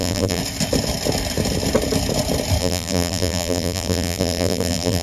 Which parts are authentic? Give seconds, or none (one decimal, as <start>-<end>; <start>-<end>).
0.4-2.6